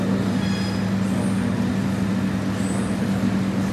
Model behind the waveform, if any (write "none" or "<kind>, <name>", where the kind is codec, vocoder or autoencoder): none